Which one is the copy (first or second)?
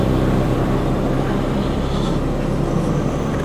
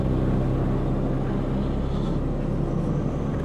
first